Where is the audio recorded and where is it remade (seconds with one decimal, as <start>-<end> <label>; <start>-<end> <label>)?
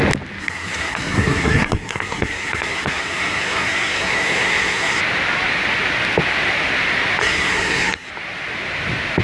0.0-0.4 recorded; 0.4-5.0 remade; 5.0-7.2 recorded; 7.2-8.1 remade; 8.1-9.2 recorded